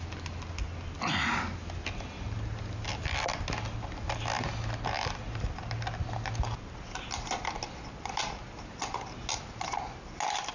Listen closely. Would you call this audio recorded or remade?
recorded